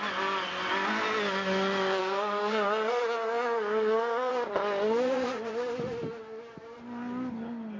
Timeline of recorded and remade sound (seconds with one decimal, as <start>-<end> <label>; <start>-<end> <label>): 0.0-2.0 recorded; 2.0-4.3 remade; 4.3-7.8 recorded